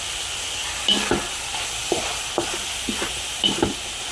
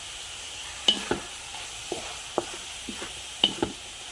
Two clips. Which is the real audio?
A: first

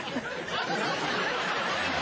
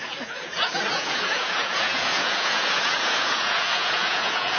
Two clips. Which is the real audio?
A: first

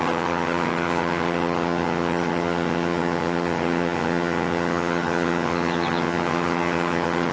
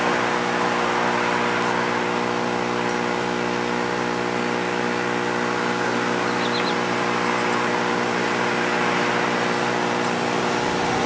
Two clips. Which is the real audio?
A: second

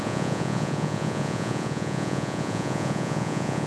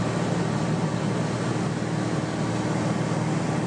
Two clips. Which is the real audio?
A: second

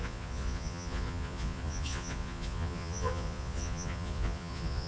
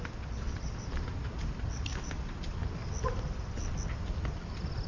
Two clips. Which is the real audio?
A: second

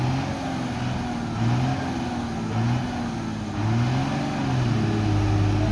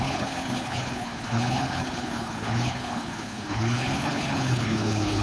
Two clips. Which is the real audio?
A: first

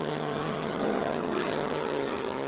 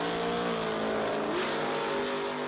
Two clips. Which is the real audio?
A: second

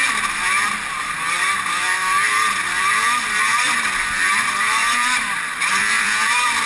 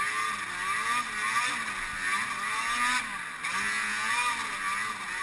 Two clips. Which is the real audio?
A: second